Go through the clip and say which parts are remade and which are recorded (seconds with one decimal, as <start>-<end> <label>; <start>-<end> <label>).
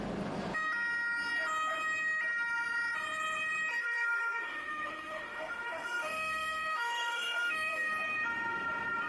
0.0-3.7 recorded; 3.7-7.9 remade; 7.9-9.1 recorded